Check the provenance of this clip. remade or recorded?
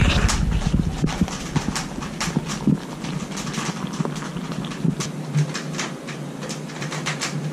recorded